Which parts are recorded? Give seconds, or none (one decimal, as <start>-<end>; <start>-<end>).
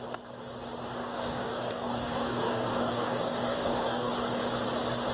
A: 0.0-1.0; 4.1-5.1